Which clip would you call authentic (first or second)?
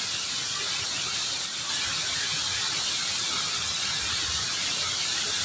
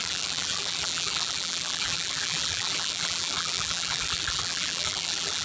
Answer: first